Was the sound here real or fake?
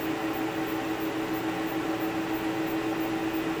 real